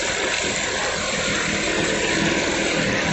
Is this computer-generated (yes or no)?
no